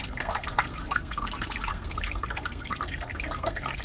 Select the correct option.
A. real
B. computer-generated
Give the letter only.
B